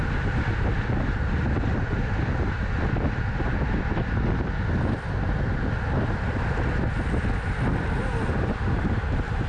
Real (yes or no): yes